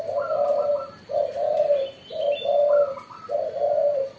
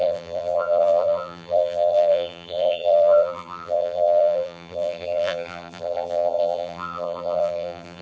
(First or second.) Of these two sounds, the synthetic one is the second